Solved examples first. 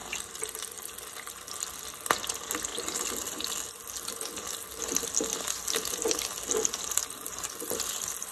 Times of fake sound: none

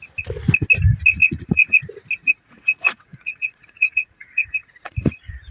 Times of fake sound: 1.1-1.8 (vocoder, Vocos); 2.2-5.5

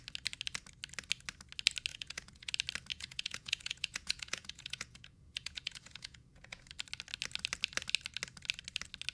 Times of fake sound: 1.9-2.5 (vocoder, Vocos); 2.9-6.6